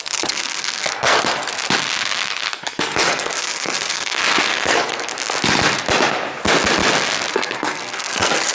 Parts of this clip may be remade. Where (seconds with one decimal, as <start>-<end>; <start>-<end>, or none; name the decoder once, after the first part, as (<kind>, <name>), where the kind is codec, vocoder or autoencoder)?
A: 0.0-1.5 (codec, SNAC); 2.3-5.1; 7.3-8.5